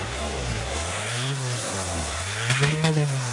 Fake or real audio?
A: fake